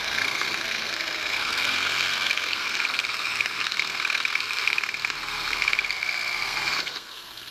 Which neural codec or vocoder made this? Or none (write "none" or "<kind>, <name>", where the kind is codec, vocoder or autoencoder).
codec, SNAC